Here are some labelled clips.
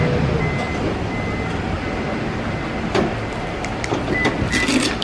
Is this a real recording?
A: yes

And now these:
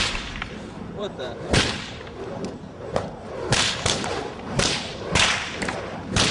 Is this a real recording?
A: no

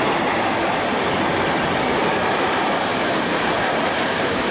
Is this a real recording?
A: no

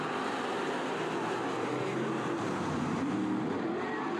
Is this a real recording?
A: no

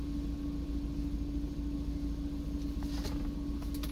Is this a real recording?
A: yes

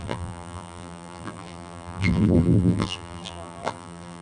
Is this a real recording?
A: no